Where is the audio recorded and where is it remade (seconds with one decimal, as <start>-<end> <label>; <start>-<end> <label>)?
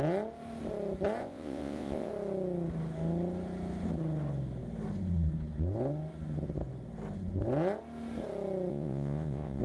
0.0-1.2 recorded; 1.2-2.1 remade; 2.1-8.7 recorded; 8.7-9.6 remade